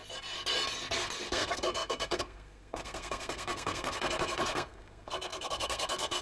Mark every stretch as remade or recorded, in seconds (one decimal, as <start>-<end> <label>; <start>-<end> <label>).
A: 0.0-0.9 recorded; 0.9-6.2 remade